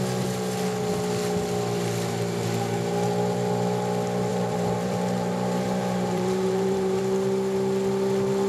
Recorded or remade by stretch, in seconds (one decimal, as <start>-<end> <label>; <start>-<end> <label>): 0.0-4.3 recorded; 4.3-7.0 remade; 7.0-8.5 recorded